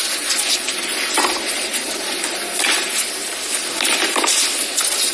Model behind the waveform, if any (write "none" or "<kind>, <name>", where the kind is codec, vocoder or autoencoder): none